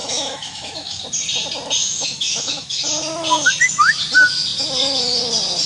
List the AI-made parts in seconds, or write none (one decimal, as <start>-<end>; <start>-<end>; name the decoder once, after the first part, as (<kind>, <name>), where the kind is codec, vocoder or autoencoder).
0.0-1.0 (autoencoder, DAC-VAE); 1.8-2.8